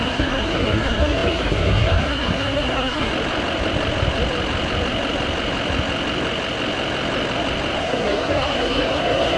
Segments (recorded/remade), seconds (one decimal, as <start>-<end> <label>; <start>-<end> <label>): 0.0-3.1 remade; 3.1-7.8 recorded; 7.8-9.4 remade